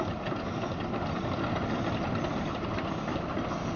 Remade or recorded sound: recorded